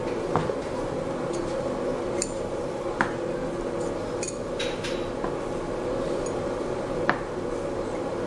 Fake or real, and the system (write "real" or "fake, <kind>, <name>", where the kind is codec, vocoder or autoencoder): real